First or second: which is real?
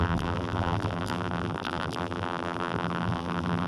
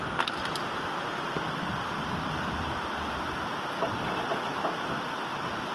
second